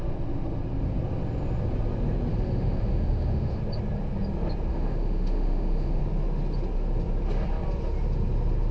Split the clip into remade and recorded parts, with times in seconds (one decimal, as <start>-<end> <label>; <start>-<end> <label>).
0.0-2.3 recorded; 2.3-3.6 remade; 3.6-4.7 recorded; 4.7-6.0 remade; 6.0-8.7 recorded